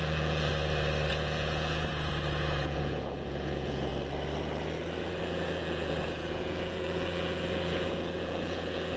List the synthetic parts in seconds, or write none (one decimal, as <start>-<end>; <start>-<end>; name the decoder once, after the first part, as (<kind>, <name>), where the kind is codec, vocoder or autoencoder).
0.0-0.5 (vocoder, Vocos); 1.1-3.9; 5.2-9.0